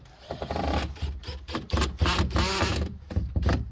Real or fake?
real